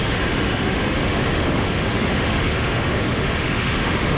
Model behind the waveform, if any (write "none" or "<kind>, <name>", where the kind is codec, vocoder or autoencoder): autoencoder, DAC-VAE